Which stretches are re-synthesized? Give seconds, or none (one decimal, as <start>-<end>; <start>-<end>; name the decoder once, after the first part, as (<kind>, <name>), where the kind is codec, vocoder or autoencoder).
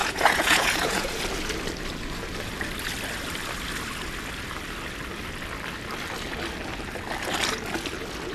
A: 0.0-1.2 (vocoder, Vocos)